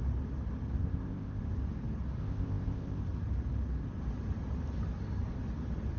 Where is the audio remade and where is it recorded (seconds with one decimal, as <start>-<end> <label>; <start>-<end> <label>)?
0.0-0.8 recorded; 0.8-1.4 remade; 1.4-2.2 recorded; 2.2-3.0 remade; 3.0-6.0 recorded